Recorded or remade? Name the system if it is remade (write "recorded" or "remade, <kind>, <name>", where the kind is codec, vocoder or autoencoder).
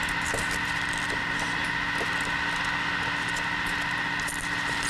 recorded